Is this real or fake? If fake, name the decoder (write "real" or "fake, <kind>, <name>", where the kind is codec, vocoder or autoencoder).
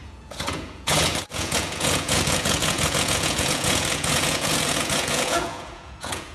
fake, vocoder, Vocos